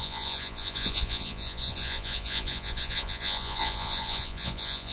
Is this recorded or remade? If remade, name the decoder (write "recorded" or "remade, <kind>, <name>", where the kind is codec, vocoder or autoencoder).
remade, vocoder, Vocos